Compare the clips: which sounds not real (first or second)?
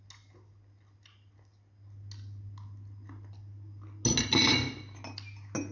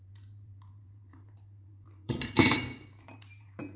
second